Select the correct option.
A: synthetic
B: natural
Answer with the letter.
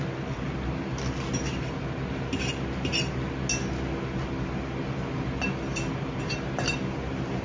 B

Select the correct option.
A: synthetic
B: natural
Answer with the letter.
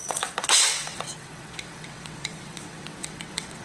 A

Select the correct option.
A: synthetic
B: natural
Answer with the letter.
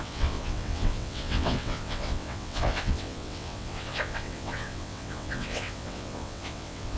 A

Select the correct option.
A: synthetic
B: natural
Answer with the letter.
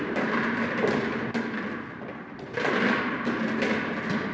B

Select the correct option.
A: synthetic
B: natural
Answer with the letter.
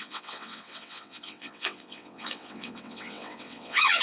A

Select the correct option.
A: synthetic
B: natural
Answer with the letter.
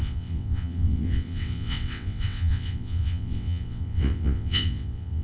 A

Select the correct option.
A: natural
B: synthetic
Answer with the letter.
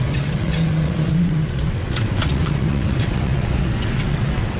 B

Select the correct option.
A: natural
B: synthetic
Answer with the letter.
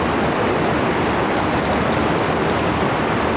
A